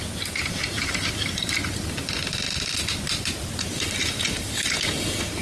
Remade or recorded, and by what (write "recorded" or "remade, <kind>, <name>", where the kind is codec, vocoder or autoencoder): recorded